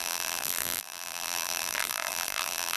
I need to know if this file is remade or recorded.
remade